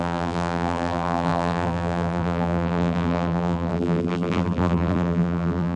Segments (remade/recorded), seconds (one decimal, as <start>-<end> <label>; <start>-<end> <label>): 0.0-5.8 remade